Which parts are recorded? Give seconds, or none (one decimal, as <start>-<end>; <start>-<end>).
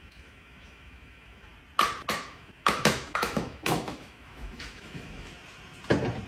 1.5-2.1; 5.3-6.3